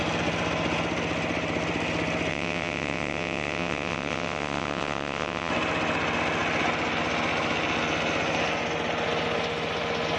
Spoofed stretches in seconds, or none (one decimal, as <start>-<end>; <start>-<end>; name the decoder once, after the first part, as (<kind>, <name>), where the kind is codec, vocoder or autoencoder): 2.3-5.5 (vocoder, WaveNeXt)